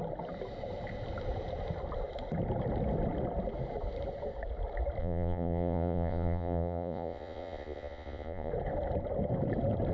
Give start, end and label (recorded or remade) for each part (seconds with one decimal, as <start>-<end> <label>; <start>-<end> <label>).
0.0-5.0 recorded; 5.0-8.5 remade; 8.5-9.9 recorded